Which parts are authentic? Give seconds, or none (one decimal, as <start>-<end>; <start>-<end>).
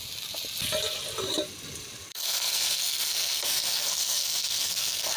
0.0-2.1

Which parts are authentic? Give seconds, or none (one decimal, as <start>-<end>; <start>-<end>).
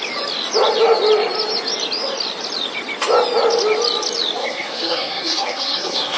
0.0-4.4